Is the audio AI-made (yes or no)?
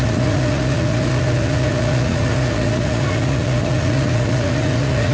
yes